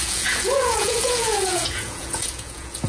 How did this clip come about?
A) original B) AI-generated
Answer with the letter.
B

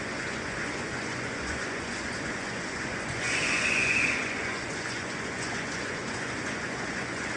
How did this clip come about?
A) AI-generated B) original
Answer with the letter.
A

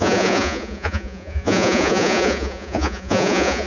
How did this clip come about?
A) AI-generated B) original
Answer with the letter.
A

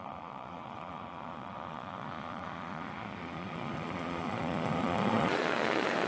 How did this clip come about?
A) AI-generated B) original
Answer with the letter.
A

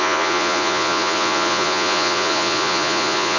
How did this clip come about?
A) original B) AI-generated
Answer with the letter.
B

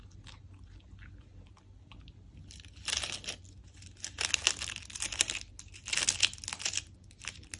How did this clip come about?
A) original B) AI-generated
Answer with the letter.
A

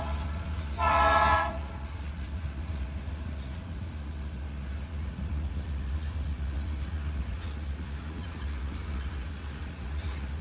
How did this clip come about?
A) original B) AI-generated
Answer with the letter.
B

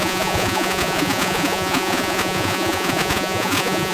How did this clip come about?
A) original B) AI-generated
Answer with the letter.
B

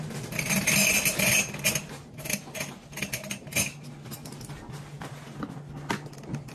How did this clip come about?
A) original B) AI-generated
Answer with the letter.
A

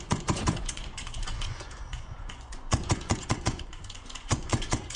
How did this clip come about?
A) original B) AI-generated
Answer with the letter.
B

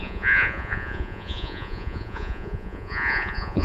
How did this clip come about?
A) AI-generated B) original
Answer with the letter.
A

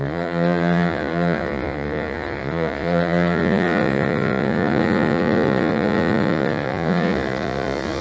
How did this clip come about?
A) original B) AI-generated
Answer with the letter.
B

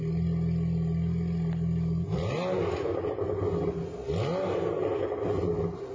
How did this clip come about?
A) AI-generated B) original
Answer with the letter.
B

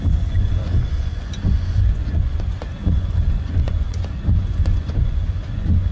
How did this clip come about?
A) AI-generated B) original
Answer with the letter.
A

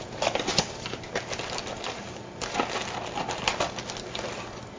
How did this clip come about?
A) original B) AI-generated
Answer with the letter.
A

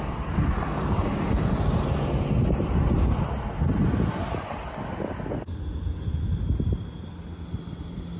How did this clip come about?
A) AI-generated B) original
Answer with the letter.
B